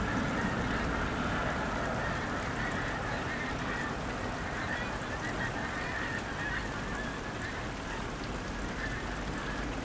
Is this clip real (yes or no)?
yes